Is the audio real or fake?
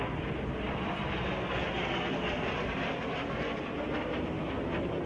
real